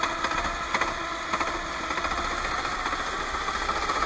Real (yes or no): yes